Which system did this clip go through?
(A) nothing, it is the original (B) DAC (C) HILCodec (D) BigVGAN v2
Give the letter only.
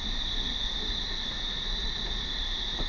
A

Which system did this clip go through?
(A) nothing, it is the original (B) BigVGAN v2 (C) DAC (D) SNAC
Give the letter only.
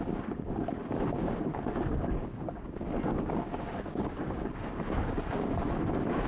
C